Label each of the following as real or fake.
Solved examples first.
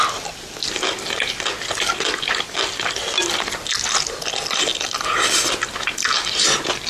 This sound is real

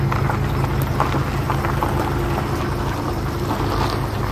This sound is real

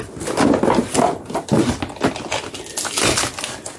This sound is real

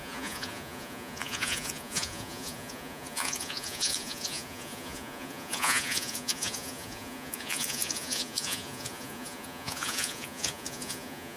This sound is fake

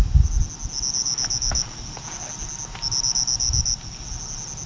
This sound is real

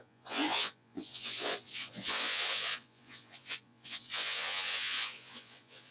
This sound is fake